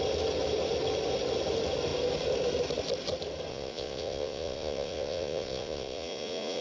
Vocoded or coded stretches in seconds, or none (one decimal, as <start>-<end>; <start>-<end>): 3.5-6.6